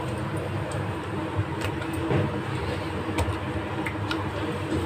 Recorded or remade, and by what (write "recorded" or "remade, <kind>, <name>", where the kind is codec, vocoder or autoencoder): remade, vocoder, BigVGAN v2